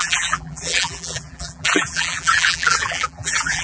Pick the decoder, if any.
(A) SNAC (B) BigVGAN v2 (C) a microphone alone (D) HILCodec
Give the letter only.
B